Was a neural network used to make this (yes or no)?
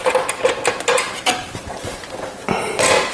no